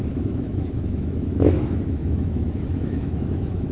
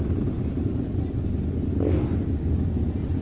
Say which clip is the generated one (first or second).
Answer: first